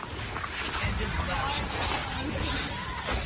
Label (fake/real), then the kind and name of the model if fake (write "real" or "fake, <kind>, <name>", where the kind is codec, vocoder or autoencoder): real